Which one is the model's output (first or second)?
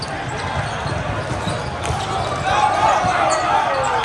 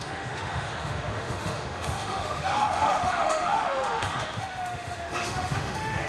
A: second